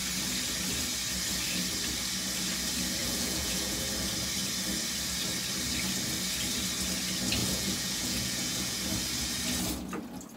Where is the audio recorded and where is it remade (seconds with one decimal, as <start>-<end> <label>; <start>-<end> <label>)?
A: 0.0-3.0 recorded; 3.0-3.8 remade; 3.8-7.4 recorded; 7.4-8.8 remade; 8.8-10.4 recorded